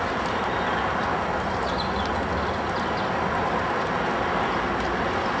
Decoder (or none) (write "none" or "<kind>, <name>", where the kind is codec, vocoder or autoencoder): none